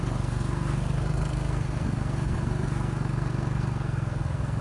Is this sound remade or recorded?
remade